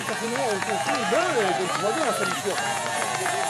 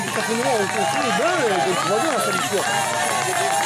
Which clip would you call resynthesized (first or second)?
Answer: first